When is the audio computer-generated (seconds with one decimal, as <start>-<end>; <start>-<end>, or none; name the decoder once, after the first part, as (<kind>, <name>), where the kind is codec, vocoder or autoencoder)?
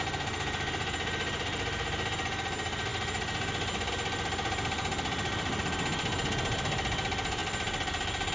none